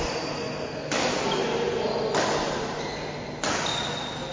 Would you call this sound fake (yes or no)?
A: no